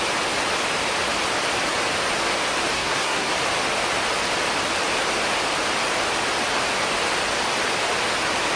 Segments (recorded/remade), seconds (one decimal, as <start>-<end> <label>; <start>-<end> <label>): 0.0-2.7 recorded; 2.7-3.3 remade; 3.3-8.6 recorded